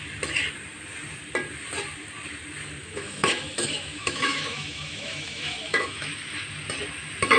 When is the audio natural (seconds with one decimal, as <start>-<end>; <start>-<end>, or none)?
0.0-2.8; 6.1-7.4